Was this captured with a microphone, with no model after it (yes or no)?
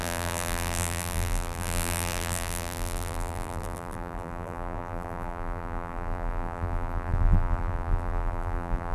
no